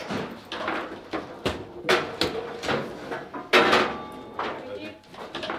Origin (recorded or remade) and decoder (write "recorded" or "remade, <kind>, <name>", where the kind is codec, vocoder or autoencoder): recorded